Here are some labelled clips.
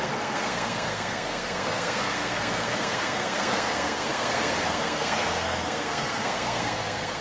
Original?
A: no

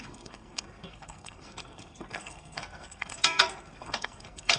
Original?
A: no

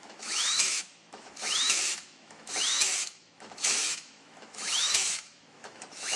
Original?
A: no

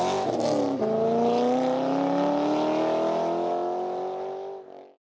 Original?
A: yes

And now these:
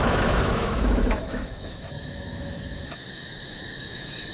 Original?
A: no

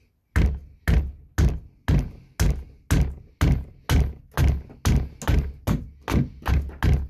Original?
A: yes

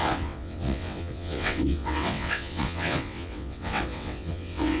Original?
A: no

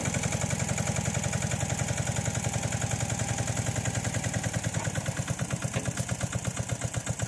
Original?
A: yes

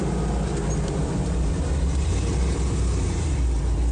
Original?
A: yes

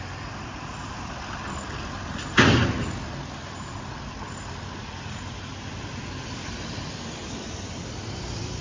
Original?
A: no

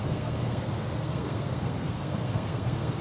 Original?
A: no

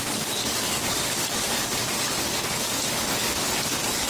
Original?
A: no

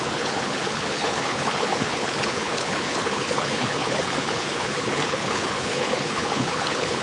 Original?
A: no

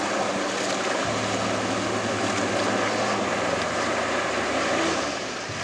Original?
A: yes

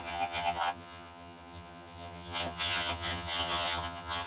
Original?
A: no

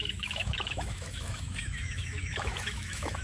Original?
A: no